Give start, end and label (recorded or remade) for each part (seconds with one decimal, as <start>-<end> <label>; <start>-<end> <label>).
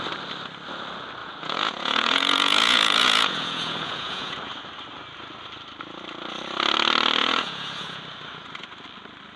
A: 0.0-1.2 recorded; 1.2-4.4 remade; 4.4-7.2 recorded; 7.2-8.0 remade; 8.0-9.4 recorded